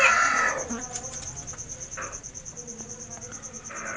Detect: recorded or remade recorded